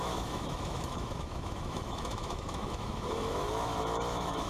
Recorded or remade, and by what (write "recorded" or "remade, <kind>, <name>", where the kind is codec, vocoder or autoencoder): remade, autoencoder, DAC-VAE